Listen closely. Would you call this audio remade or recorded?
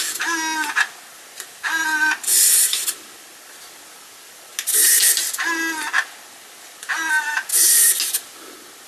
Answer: recorded